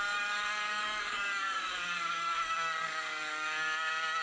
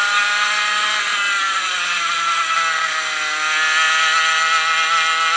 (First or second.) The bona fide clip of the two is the second